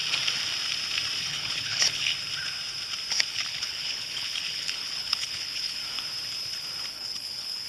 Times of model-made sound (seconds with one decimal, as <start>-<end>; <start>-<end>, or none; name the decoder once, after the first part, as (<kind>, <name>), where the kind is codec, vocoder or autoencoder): 1.2-2.1 (codec, HILCodec); 3.3-5.8; 6.9-7.7